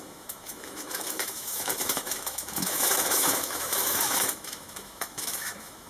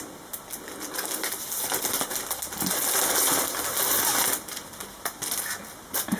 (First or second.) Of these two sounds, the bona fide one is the second